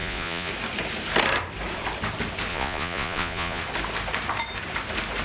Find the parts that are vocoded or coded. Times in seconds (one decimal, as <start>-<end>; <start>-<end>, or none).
0.0-0.5; 2.5-3.6